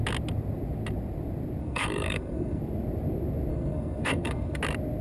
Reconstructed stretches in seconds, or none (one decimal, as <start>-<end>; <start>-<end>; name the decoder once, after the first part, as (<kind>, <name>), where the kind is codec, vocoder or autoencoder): 1.6-2.6 (codec, SNAC); 3.5-4.6